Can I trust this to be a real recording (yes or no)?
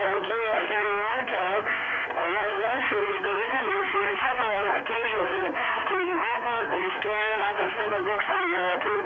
no